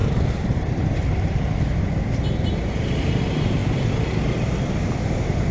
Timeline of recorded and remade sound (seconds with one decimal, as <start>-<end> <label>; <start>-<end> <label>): 0.0-2.5 remade; 2.5-3.1 recorded; 3.1-5.5 remade